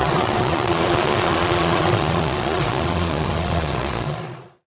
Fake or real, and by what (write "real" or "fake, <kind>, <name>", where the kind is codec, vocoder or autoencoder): fake, vocoder, Vocos